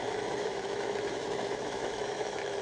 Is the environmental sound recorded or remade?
remade